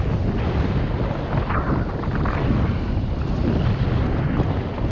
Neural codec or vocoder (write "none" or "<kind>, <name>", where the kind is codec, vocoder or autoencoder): none